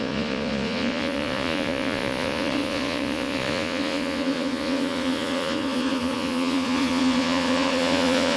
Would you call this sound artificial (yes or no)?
yes